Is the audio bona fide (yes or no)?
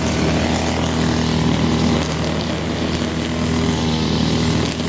yes